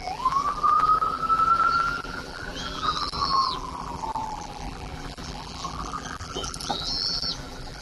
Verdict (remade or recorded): remade